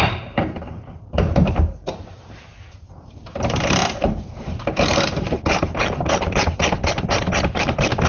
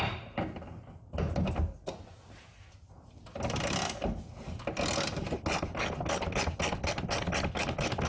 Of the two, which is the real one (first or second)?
second